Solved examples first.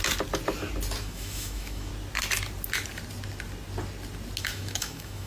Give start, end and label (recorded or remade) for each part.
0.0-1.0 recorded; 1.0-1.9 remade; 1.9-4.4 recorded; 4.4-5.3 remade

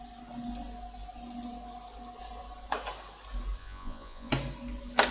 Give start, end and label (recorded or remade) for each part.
0.0-3.6 recorded; 3.6-4.3 remade; 4.3-5.1 recorded

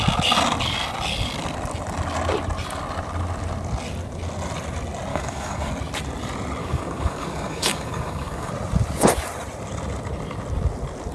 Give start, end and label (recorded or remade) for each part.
0.0-5.1 recorded; 5.1-5.7 remade; 5.7-6.6 recorded; 6.6-8.5 remade; 8.5-11.1 recorded

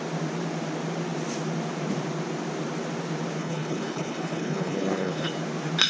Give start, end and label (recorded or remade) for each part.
0.0-3.4 recorded; 3.4-5.3 remade; 5.3-5.9 recorded

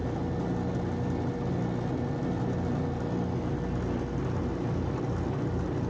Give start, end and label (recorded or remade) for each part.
0.0-5.9 recorded